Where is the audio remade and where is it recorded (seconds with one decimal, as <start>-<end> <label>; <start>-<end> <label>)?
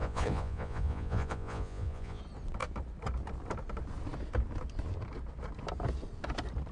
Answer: 0.0-2.2 remade; 2.2-6.7 recorded